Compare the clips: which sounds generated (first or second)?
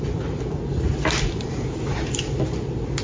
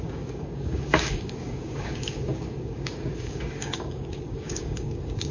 second